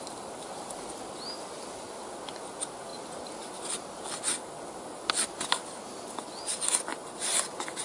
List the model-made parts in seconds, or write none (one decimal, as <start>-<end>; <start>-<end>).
none